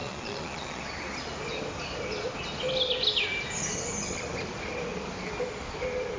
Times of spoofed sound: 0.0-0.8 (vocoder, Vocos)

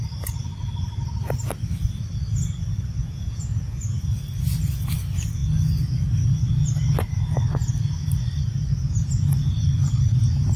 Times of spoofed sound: 3.0-3.8 (vocoder, Vocos)

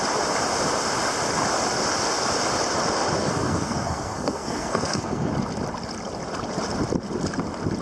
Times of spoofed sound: 3.2-5.3 (codec, SNAC)

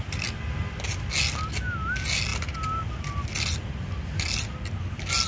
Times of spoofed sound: none